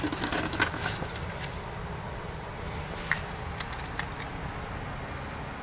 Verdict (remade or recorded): recorded